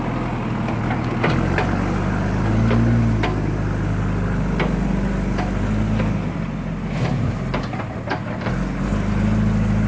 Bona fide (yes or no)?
yes